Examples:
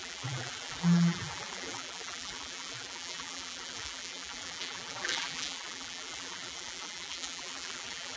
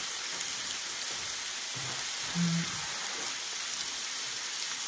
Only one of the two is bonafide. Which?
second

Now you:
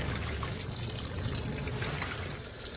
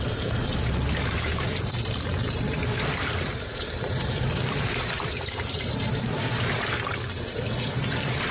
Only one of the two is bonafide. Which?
first